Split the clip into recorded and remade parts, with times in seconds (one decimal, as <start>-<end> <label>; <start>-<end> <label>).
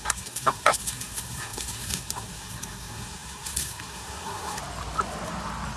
0.0-4.6 remade; 4.6-5.8 recorded